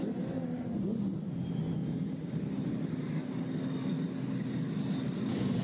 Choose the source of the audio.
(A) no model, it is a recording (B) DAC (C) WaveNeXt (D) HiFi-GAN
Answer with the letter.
A